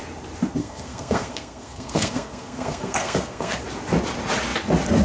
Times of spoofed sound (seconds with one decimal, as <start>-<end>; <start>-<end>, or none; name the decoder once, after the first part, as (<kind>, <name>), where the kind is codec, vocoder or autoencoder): 0.6-3.6 (codec, SNAC)